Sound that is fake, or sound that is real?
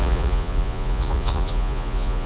fake